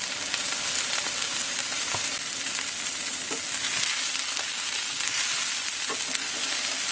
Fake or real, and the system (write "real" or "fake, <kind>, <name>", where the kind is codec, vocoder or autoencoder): real